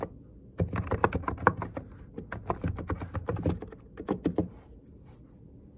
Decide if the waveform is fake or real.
real